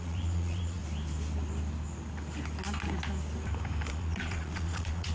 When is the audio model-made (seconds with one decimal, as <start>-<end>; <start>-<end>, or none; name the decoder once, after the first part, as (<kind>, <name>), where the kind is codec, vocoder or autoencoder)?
0.0-0.8 (vocoder, Vocos); 3.9-5.1